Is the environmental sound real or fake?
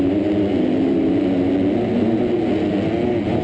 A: real